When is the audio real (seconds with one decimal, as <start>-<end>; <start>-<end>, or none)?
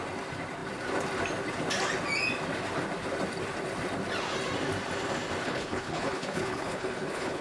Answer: 0.0-5.4